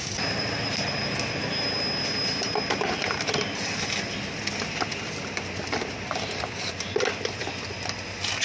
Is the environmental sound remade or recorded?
recorded